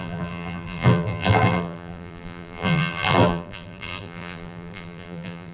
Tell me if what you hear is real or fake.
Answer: fake